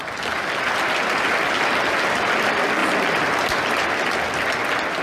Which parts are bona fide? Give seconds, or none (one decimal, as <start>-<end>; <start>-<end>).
0.0-5.0